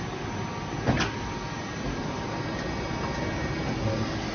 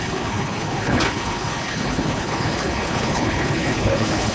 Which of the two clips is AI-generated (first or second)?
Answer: second